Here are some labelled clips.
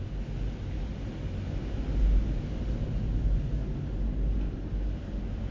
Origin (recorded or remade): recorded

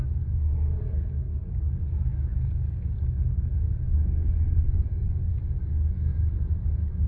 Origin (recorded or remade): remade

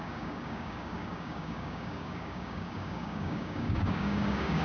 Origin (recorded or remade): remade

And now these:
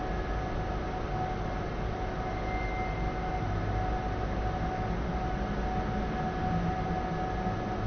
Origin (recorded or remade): recorded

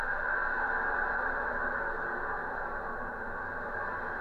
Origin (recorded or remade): recorded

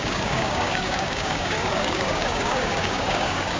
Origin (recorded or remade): remade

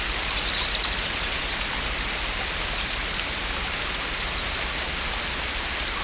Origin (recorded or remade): recorded